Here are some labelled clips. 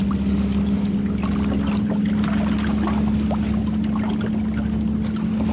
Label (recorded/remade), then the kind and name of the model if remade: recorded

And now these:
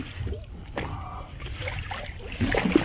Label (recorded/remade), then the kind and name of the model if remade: recorded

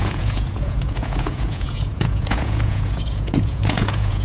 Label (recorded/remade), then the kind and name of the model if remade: remade, vocoder, Vocos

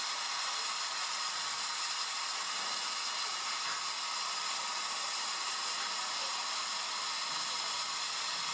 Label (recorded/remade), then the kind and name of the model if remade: recorded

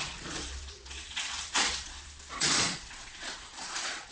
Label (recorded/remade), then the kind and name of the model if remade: remade, vocoder, Vocos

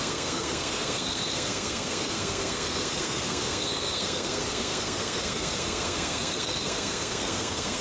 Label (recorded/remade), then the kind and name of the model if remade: remade, codec, SNAC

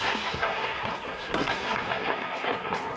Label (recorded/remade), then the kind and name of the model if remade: remade, codec, SNAC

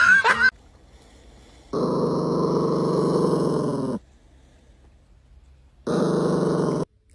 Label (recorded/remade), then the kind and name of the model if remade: recorded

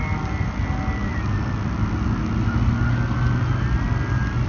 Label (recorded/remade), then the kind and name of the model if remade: recorded